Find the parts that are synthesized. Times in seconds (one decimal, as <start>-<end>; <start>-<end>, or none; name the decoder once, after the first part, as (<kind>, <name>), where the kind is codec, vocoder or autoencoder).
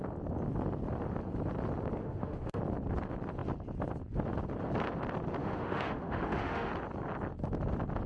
2.0-2.6 (autoencoder, DAC-VAE); 5.4-6.7